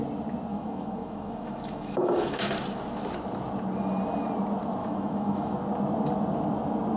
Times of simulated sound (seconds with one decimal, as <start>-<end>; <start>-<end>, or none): 0.5-2.5; 4.8-5.5